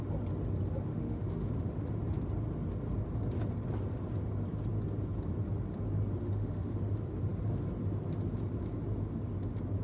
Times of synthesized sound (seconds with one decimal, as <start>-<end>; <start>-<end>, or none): 0.9-1.5; 6.2-6.8